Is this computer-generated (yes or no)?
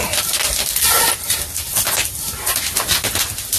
no